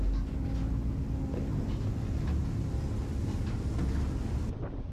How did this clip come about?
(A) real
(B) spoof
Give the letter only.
A